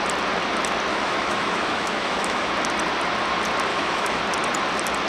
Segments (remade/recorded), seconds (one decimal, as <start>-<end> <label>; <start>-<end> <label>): 0.0-0.9 recorded; 0.9-2.5 remade; 2.5-3.7 recorded; 3.7-4.2 remade; 4.2-5.1 recorded